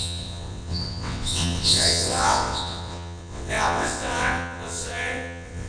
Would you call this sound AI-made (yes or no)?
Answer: yes